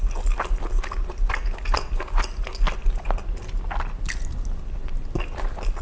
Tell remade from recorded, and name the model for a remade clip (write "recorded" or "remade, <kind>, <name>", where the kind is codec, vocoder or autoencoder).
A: recorded